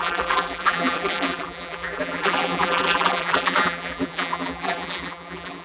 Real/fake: fake